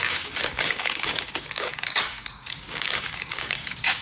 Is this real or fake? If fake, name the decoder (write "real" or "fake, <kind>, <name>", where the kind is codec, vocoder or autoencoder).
fake, codec, DAC